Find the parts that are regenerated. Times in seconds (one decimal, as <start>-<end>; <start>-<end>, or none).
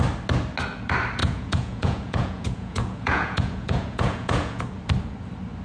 1.2-4.6